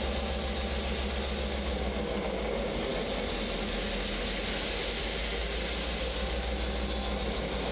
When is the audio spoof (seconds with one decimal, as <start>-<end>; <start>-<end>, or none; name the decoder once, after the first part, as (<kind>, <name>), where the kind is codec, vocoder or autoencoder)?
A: none